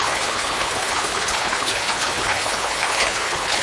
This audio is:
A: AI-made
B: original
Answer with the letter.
A